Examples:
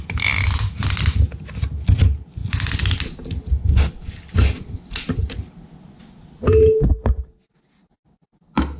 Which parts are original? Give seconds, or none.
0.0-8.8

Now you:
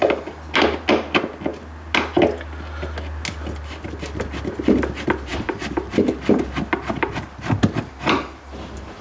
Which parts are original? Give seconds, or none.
0.0-9.0

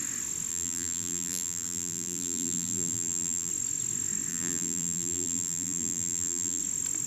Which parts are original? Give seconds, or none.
0.0-0.5; 3.5-4.3; 6.6-7.1

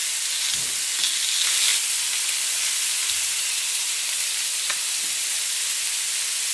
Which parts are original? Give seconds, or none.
0.0-1.7; 5.6-6.5

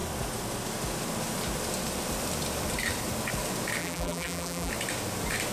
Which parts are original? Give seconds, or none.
0.0-3.8; 4.7-5.5